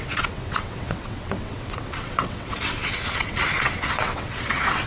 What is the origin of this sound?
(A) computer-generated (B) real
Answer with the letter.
A